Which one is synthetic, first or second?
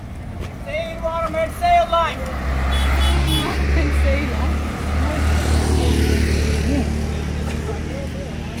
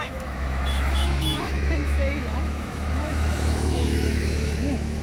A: second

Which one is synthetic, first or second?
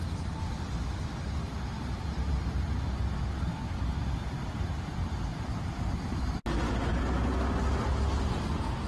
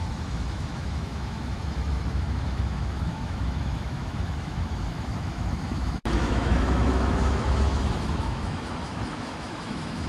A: second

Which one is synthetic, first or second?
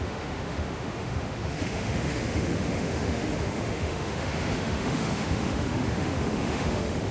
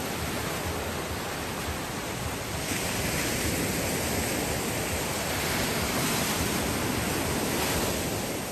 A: first